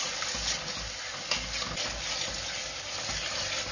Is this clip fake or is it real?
real